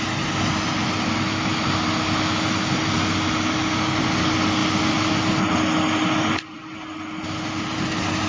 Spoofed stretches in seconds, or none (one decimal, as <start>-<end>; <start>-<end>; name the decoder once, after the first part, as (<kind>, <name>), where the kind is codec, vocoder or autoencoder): none